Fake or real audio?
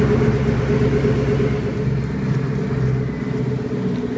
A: real